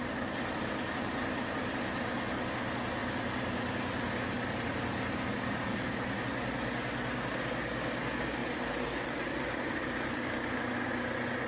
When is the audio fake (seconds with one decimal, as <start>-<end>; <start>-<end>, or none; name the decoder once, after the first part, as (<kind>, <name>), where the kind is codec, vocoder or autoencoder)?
3.0-6.2 (vocoder, BigVGAN v2); 8.4-10.6